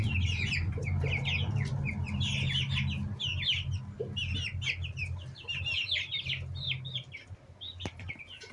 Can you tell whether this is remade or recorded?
recorded